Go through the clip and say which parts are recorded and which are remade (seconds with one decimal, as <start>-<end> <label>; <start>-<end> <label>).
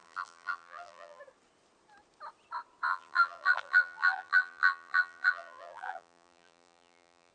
0.0-1.2 remade; 1.2-2.9 recorded; 2.9-7.3 remade